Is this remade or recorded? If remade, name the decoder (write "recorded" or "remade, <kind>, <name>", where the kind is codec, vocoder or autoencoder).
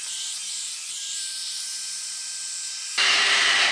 remade, vocoder, BigVGAN v2